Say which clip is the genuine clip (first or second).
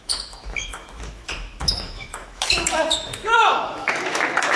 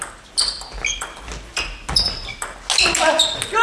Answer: second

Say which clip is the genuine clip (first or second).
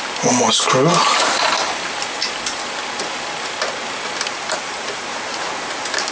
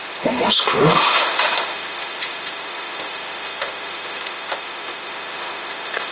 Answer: first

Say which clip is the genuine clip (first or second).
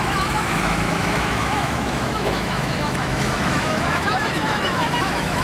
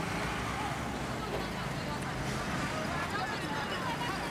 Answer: second